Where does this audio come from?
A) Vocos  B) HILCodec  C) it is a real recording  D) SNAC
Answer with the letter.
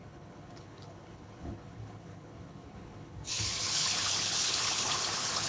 B